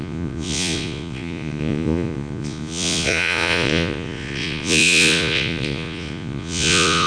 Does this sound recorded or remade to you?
remade